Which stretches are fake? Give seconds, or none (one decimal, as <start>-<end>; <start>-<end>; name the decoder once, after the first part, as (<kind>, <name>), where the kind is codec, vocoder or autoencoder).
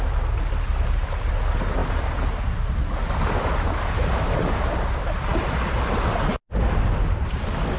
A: none